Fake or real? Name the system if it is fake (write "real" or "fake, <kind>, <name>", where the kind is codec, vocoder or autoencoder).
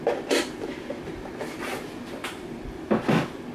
real